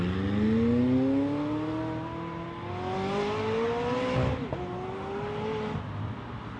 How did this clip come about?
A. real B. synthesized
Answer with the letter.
A